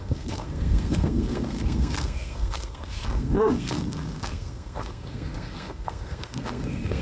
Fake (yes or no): yes